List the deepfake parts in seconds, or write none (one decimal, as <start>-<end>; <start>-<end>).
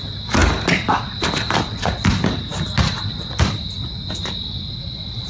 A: none